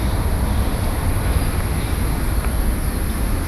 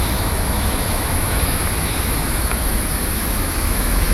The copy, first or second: second